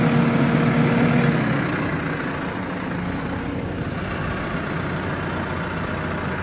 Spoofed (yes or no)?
no